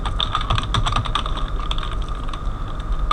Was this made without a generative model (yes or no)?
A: yes